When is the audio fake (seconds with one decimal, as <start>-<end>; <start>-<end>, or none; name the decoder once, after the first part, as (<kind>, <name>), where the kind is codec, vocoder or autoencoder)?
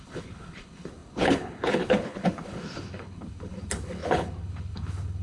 0.0-5.2 (codec, HILCodec)